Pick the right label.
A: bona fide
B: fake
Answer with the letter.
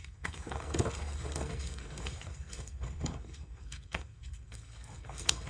B